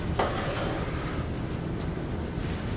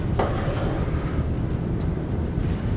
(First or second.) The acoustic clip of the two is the first